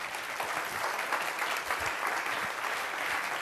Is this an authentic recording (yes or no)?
yes